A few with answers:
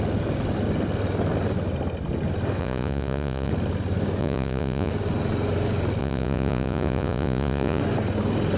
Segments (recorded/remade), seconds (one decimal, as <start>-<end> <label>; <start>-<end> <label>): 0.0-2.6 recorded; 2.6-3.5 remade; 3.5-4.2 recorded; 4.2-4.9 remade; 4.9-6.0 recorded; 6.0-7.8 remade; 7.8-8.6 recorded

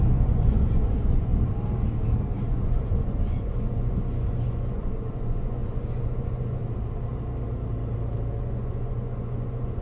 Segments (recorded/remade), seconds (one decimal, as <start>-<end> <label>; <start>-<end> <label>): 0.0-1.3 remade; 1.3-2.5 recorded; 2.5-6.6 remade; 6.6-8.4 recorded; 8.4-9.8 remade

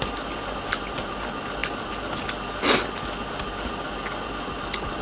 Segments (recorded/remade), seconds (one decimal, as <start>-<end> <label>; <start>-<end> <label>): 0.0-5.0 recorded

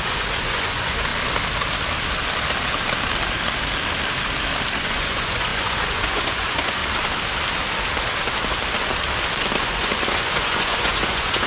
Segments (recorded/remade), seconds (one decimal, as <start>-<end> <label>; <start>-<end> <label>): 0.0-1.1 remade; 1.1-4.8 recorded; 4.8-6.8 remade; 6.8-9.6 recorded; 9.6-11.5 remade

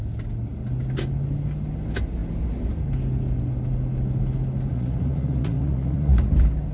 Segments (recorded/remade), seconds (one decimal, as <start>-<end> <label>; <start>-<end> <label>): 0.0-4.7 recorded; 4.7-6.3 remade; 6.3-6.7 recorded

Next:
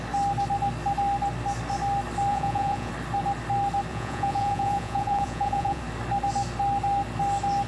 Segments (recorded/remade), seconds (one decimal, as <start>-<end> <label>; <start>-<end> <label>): 0.0-2.3 recorded; 2.3-2.9 remade; 2.9-3.9 recorded; 3.9-5.8 remade; 5.8-7.7 recorded